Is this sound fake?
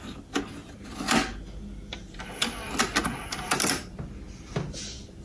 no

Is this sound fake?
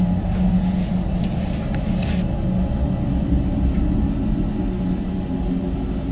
no